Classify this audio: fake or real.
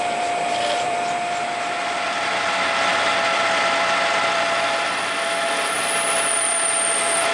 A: fake